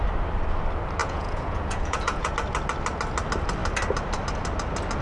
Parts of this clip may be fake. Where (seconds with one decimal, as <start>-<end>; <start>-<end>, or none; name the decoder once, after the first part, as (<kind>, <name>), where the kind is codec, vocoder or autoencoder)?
1.0-2.3 (vocoder, Vocos)